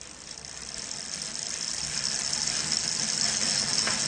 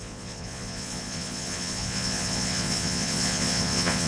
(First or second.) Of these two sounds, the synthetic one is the second